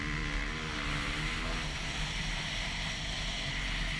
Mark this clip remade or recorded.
recorded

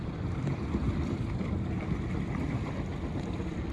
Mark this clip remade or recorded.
remade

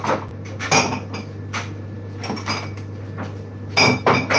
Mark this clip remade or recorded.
recorded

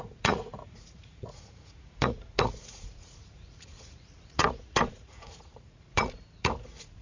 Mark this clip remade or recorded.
remade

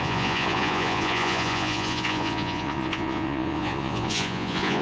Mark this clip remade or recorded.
remade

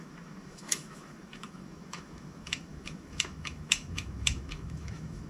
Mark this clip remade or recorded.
remade